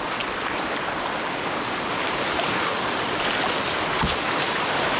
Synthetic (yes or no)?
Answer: no